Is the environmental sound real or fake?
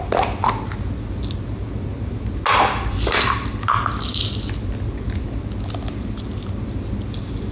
real